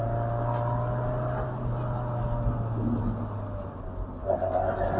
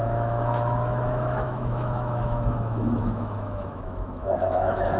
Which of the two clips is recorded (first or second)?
first